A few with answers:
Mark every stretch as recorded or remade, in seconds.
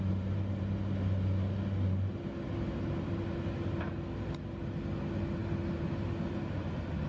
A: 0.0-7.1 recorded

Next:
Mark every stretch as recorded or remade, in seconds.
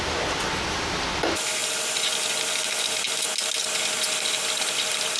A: 0.0-5.2 recorded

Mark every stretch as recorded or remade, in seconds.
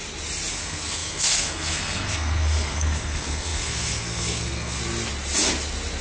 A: 0.0-0.5 recorded; 0.5-4.8 remade; 4.8-6.0 recorded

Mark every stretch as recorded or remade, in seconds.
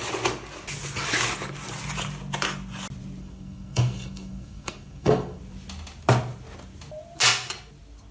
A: 0.0-3.2 recorded; 3.2-5.4 remade; 5.4-8.1 recorded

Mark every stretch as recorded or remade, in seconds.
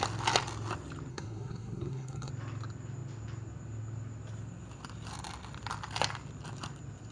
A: 0.0-1.1 recorded; 1.1-2.3 remade; 2.3-7.1 recorded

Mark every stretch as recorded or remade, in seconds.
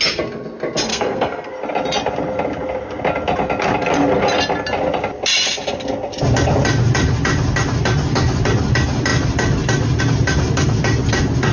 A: 0.0-0.9 recorded; 0.9-1.5 remade; 1.5-11.5 recorded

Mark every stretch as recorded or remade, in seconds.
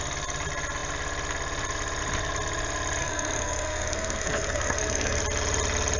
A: 0.0-3.0 recorded; 3.0-5.2 remade; 5.2-6.0 recorded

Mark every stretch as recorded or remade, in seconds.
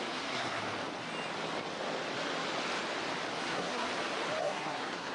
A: 0.0-0.6 remade; 0.6-3.4 recorded; 3.4-3.9 remade; 3.9-4.4 recorded; 4.4-5.1 remade